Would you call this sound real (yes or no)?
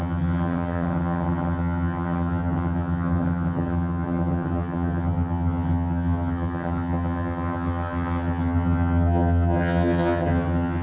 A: no